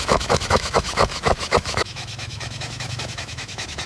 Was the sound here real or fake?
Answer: fake